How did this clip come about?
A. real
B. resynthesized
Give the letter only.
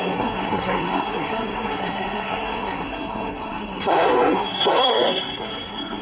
B